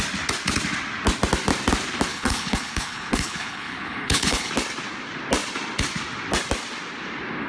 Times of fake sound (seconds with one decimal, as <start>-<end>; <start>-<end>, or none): 2.1-4.5